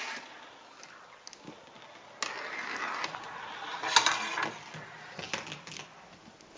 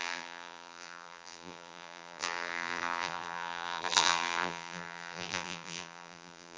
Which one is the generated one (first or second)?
second